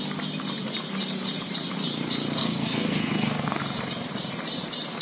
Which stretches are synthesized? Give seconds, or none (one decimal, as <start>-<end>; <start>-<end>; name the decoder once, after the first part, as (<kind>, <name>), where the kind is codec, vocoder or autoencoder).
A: 2.4-3.6 (codec, SNAC)